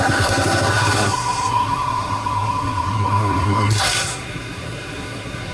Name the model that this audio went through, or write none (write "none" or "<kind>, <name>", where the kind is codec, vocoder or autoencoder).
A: codec, SNAC